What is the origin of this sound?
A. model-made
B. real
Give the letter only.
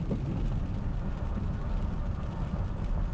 B